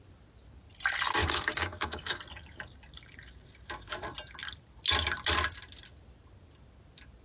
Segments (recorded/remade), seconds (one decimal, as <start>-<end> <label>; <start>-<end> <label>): 0.0-1.2 recorded; 1.2-2.2 remade; 2.2-7.2 recorded